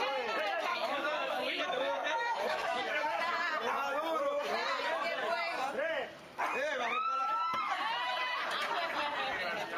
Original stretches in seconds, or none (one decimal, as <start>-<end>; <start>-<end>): 0.0-0.7; 3.2-9.8